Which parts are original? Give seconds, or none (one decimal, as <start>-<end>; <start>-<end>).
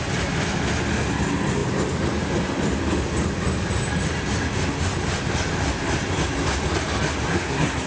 0.0-7.3